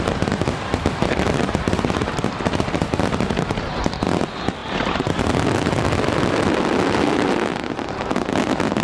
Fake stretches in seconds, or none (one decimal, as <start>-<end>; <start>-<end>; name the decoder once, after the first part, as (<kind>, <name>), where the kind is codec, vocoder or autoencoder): 4.6-5.2 (vocoder, BigVGAN v2)